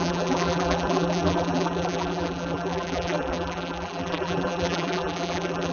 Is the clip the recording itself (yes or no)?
no